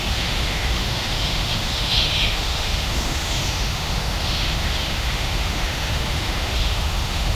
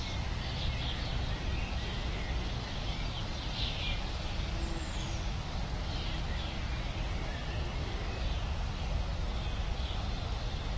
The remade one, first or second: first